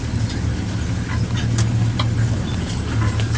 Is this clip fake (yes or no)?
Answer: no